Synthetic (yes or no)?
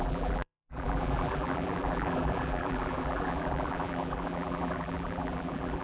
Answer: yes